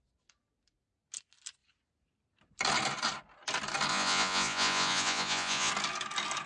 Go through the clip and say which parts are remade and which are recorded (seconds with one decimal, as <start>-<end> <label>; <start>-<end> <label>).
0.0-3.9 recorded; 3.9-5.7 remade; 5.7-6.5 recorded